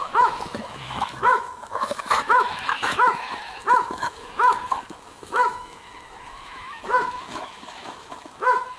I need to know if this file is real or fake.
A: fake